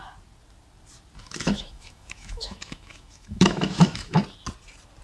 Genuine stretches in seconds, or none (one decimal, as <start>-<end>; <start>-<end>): 0.0-1.2; 4.2-5.0

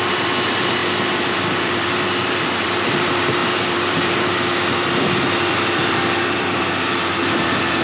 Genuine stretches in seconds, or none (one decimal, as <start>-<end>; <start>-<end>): none

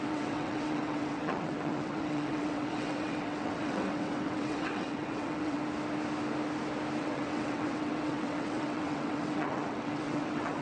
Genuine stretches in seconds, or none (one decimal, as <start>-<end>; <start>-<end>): 5.6-7.0

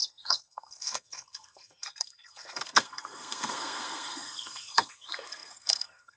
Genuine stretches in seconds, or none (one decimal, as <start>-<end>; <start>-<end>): none

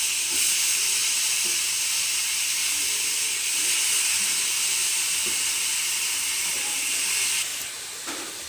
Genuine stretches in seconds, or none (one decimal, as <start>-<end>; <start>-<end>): 0.0-1.0; 1.6-8.5

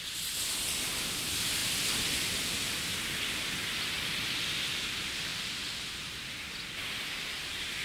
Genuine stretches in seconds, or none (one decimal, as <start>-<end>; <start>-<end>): 0.0-5.3; 6.4-7.8

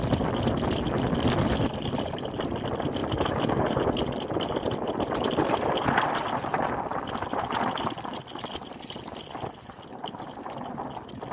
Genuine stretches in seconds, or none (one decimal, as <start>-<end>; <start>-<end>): 0.0-11.3

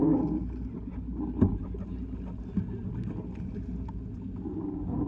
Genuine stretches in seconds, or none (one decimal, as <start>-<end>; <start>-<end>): 0.0-5.1